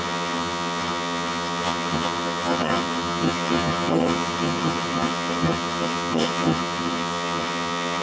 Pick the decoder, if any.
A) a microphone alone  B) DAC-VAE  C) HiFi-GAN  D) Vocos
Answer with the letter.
C